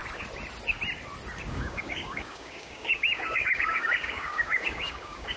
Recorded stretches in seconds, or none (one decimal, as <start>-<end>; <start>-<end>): 0.0-1.5